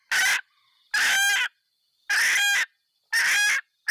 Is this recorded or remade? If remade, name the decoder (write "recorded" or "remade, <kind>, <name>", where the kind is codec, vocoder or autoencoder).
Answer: recorded